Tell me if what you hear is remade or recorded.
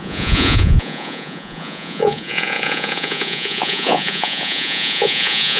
remade